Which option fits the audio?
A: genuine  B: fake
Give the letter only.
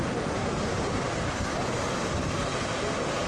A